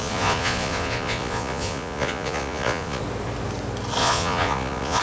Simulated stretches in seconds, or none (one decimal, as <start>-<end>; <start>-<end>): 0.0-3.0; 4.0-5.0